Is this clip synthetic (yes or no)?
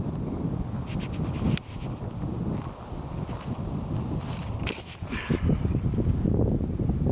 no